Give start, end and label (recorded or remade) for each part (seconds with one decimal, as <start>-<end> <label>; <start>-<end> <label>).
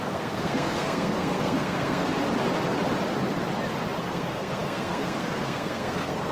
0.0-2.1 remade; 2.1-4.0 recorded; 4.0-6.3 remade